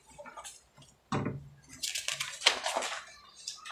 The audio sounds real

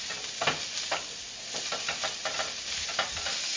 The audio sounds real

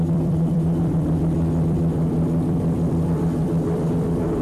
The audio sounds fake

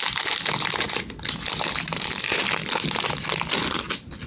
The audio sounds real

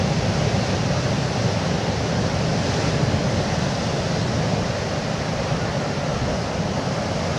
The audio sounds real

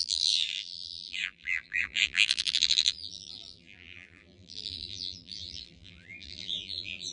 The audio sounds fake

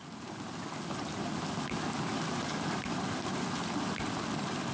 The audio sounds real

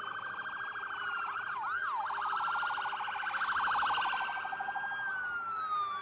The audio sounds real